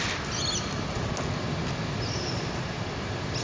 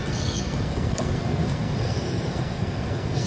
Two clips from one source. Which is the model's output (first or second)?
second